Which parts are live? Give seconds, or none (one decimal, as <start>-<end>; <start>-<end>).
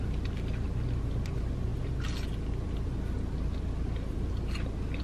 0.0-5.0